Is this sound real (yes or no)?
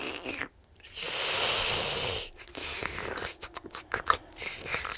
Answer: yes